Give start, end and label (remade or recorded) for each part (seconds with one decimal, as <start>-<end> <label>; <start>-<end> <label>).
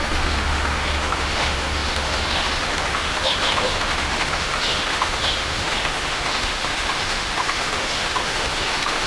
0.0-9.1 remade